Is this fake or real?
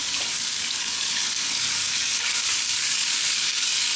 fake